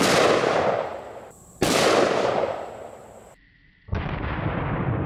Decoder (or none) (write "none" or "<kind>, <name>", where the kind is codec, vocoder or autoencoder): none